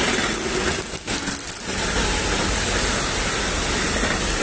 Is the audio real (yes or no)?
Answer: yes